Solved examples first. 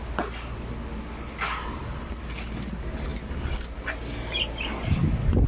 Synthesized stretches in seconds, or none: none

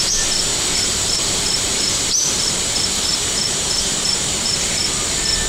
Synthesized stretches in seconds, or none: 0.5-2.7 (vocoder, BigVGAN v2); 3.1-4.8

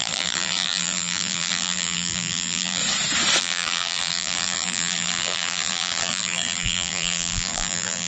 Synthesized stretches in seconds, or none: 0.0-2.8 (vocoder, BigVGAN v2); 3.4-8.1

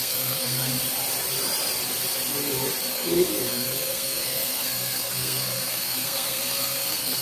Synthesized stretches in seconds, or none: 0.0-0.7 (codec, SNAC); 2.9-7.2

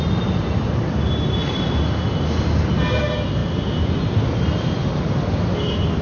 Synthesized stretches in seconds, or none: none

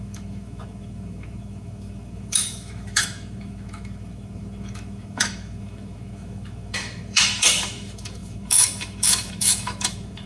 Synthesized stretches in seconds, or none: 0.0-10.3 (autoencoder, DAC-VAE)